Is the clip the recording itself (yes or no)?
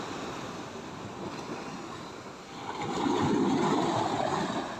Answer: yes